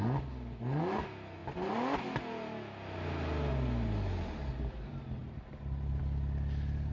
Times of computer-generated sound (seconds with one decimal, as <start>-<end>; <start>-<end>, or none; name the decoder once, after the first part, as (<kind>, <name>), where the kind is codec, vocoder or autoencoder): none